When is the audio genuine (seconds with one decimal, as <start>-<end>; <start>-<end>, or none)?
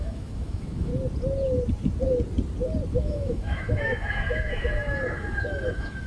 0.9-3.0